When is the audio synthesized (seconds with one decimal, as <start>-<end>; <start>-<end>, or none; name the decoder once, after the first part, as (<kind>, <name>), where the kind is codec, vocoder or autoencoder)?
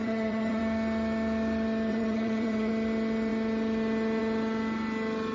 0.0-0.6 (vocoder, HiFi-GAN); 1.9-2.7